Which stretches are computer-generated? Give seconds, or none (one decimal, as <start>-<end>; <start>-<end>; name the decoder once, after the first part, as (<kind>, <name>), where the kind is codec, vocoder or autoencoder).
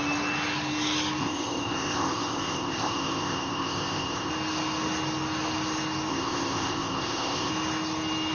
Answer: 1.2-4.3 (codec, ZipCodec); 6.1-7.5